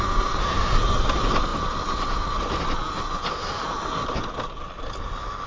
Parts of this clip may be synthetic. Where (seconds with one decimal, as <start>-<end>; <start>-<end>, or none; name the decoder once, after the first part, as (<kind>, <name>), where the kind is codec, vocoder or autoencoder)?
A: none